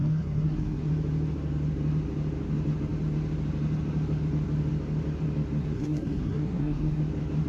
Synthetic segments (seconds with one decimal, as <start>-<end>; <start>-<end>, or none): 0.0-0.9; 5.6-7.0